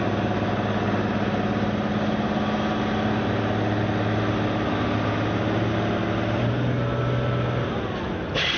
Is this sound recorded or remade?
recorded